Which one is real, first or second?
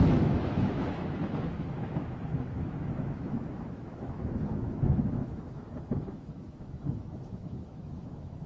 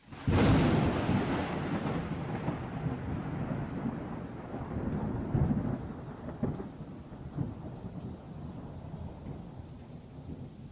second